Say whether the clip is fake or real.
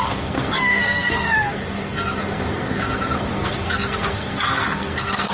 fake